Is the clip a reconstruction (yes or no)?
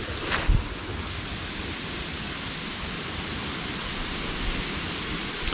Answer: no